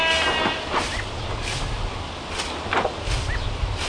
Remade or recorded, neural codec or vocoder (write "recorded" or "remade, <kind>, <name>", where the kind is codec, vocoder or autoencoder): recorded